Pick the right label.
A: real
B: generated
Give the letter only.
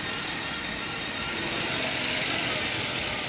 A